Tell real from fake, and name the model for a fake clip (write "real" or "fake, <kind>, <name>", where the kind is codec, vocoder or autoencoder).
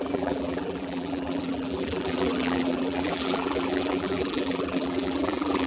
fake, vocoder, BigVGAN v2